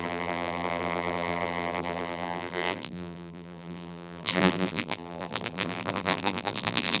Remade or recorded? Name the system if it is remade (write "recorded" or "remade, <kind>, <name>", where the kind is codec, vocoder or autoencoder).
remade, vocoder, BigVGAN v2